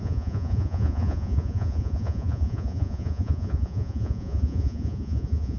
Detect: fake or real fake